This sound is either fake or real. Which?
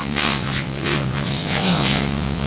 fake